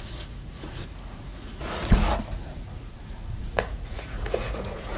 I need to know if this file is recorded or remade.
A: remade